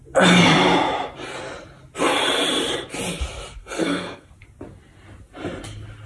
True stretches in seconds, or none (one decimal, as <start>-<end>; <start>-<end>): 0.0-3.6; 4.3-6.1